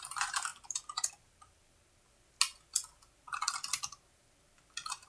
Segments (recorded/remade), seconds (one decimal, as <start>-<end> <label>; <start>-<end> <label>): 0.0-5.1 recorded